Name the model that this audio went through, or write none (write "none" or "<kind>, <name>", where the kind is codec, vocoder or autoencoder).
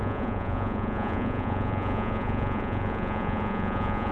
vocoder, Vocos